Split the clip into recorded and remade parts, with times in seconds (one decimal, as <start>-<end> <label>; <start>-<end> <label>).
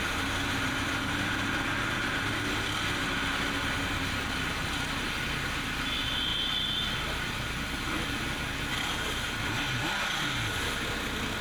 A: 0.0-11.4 recorded